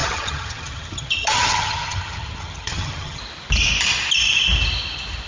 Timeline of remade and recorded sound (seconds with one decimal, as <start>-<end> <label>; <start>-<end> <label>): 0.0-3.2 remade; 3.2-5.3 recorded